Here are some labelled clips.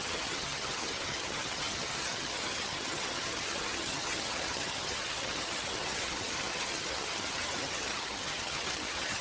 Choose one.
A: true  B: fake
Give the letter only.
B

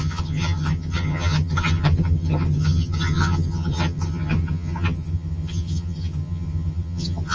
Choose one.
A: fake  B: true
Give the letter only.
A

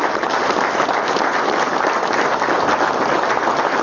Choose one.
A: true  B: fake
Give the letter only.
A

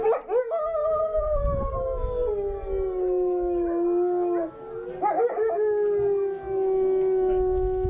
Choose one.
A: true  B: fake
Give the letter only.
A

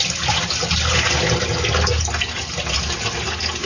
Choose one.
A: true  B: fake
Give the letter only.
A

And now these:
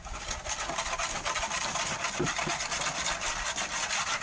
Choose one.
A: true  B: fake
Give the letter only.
A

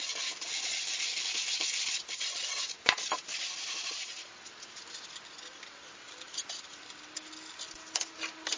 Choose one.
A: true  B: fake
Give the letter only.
A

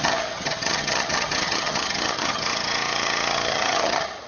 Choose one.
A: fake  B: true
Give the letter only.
A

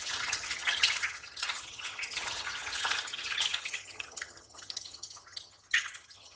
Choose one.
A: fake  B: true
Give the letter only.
A